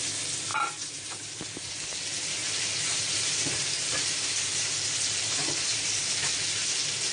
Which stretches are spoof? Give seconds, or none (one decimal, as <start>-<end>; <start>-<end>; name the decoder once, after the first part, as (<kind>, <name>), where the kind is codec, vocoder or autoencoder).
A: 0.5-1.8 (vocoder, BigVGAN v2); 2.4-6.1